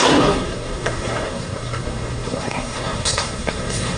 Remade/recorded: remade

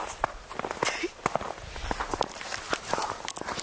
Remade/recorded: recorded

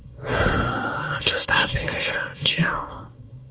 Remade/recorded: remade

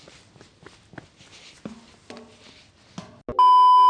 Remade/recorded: recorded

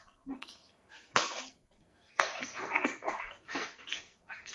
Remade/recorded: remade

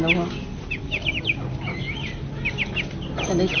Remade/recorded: recorded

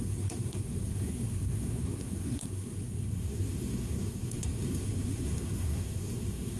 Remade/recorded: remade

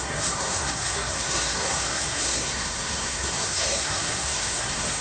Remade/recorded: remade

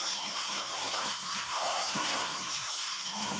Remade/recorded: remade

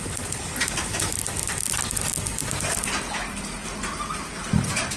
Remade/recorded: recorded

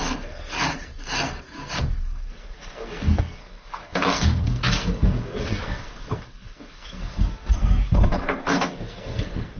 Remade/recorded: remade